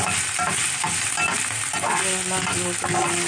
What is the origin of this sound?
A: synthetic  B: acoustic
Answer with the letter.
B